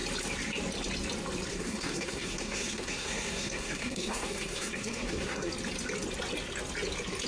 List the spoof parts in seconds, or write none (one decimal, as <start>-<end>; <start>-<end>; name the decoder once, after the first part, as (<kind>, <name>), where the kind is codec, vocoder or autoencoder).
1.5-5.5 (codec, SNAC)